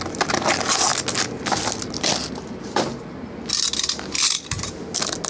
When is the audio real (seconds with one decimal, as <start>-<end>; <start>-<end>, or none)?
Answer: 0.0-5.3